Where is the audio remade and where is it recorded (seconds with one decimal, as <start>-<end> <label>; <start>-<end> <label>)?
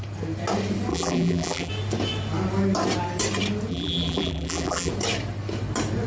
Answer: 0.0-0.9 recorded; 0.9-1.7 remade; 1.7-3.7 recorded; 3.7-4.9 remade; 4.9-6.1 recorded